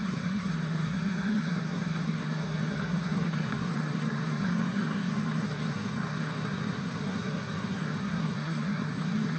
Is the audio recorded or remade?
remade